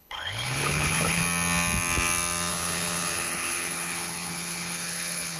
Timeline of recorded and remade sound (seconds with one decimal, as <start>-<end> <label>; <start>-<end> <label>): 0.0-1.2 remade; 1.2-2.5 recorded; 2.5-5.4 remade